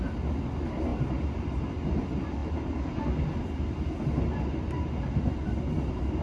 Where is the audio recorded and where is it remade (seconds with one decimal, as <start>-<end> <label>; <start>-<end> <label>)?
0.0-6.2 recorded